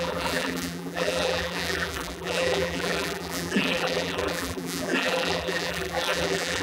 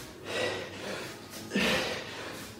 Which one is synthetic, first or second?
first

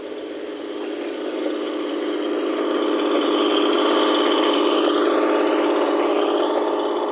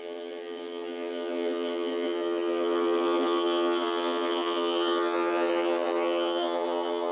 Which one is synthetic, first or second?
second